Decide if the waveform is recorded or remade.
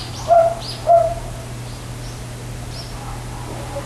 recorded